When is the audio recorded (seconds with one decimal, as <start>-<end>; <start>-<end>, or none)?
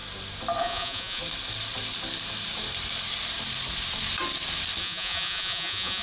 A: 0.0-0.6; 1.2-4.8